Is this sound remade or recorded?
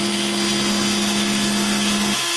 recorded